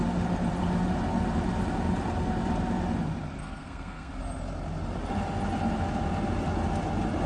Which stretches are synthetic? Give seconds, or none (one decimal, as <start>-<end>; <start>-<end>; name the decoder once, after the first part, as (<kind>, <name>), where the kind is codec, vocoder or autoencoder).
3.4-4.1 (codec, SNAC)